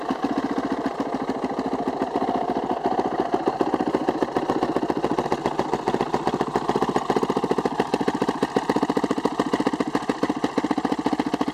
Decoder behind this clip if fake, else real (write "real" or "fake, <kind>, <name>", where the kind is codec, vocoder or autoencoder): fake, vocoder, BigVGAN v2